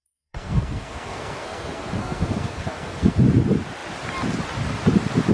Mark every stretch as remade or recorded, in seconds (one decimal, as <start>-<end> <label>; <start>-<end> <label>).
0.0-3.2 remade; 3.2-5.3 recorded